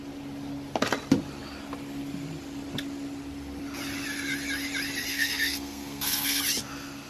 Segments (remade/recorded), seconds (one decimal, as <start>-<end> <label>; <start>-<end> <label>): 0.0-5.1 recorded; 5.1-6.4 remade; 6.4-7.1 recorded